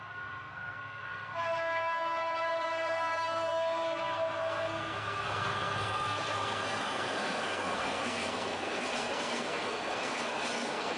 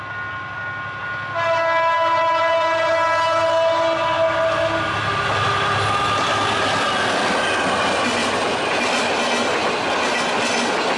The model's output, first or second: first